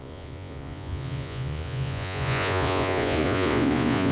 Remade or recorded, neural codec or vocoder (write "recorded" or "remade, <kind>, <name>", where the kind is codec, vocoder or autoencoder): remade, vocoder, Vocos